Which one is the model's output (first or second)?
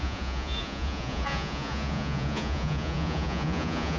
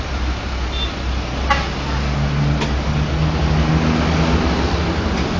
first